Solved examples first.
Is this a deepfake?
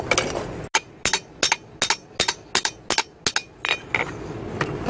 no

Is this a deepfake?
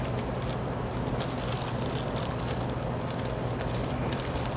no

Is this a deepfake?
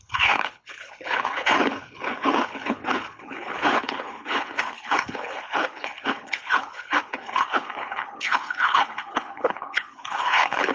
yes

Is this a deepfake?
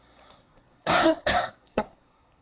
yes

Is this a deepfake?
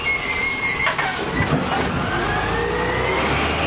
no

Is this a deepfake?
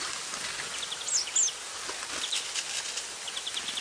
no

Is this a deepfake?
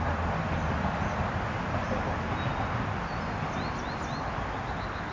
no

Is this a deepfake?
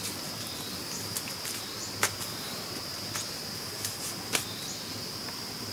no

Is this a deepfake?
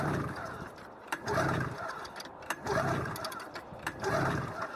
yes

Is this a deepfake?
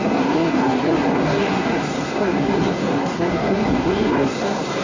yes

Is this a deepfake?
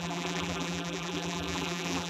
yes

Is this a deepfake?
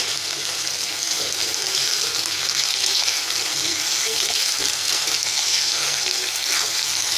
yes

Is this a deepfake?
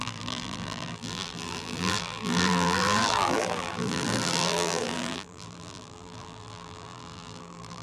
yes